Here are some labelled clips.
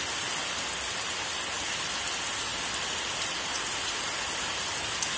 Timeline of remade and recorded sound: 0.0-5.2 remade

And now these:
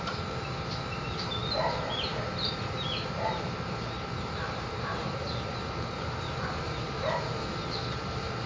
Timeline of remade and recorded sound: 0.0-8.5 remade

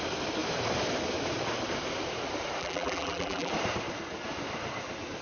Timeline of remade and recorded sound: 0.0-2.6 recorded; 2.6-3.5 remade; 3.5-5.2 recorded

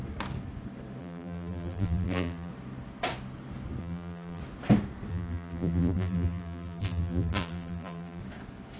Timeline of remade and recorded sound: 0.0-1.0 recorded; 1.0-2.5 remade; 2.5-3.8 recorded; 3.8-4.4 remade; 4.4-5.1 recorded; 5.1-8.2 remade; 8.2-8.8 recorded